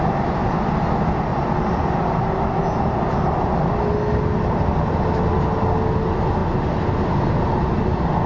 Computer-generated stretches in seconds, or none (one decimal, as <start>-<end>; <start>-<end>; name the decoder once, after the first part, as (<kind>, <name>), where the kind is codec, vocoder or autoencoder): none